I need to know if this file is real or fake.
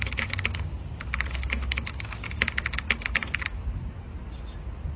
real